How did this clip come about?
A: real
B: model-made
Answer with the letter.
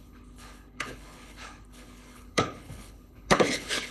B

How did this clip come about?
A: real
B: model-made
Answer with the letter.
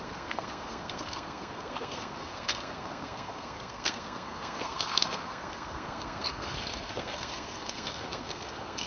B